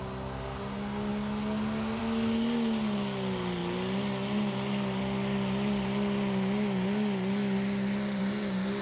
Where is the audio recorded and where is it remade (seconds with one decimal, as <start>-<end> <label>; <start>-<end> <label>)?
0.0-8.8 recorded